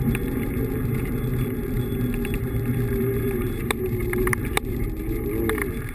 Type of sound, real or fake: fake